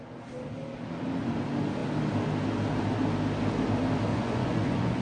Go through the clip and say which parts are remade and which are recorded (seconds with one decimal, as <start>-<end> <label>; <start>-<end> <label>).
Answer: 0.0-4.1 recorded; 4.1-5.0 remade